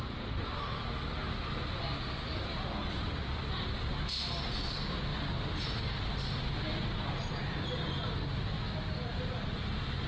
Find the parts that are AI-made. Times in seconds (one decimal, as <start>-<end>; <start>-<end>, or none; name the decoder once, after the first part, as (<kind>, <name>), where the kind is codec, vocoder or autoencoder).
1.2-4.0 (vocoder, BigVGAN v2)